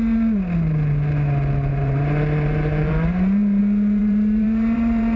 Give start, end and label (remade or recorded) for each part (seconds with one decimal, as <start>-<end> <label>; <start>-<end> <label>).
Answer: 0.0-1.7 recorded; 1.7-3.6 remade; 3.6-4.0 recorded; 4.0-5.2 remade